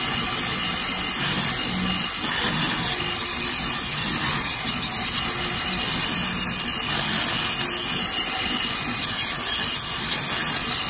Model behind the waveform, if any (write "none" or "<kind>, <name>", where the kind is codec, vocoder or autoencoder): none